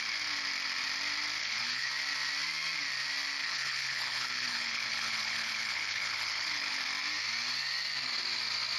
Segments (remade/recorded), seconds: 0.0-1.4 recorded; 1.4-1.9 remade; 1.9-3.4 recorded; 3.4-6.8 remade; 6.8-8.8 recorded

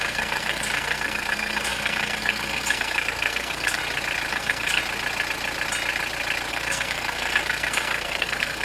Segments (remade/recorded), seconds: 0.0-3.8 remade; 3.8-4.3 recorded; 4.3-4.8 remade; 4.8-6.5 recorded; 6.5-8.6 remade

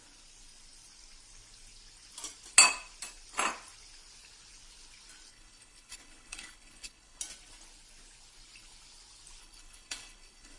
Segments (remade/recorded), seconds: 0.0-5.3 recorded; 5.3-7.2 remade; 7.2-9.4 recorded; 9.4-10.6 remade

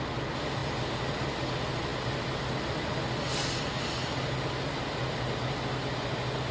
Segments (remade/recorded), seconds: 0.0-6.5 recorded

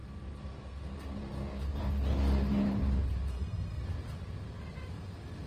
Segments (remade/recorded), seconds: 0.0-3.3 recorded; 3.3-3.8 remade; 3.8-5.5 recorded

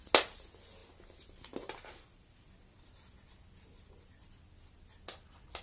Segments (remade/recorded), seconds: 0.0-5.6 recorded